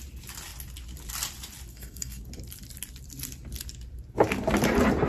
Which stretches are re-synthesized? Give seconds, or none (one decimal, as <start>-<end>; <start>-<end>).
1.7-2.2